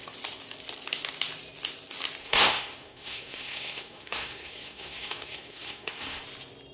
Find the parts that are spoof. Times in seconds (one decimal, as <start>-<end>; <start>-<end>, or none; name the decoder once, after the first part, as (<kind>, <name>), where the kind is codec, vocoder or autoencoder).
2.2-6.2 (codec, SNAC)